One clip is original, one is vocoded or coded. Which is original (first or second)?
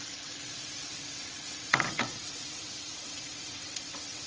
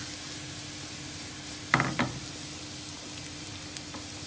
second